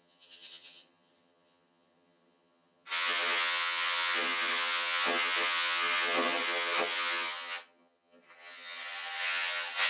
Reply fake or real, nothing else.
fake